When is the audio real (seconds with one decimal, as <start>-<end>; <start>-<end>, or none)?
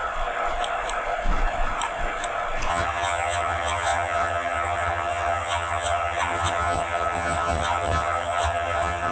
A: 0.0-2.7